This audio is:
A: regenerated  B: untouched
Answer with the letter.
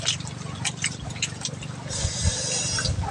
B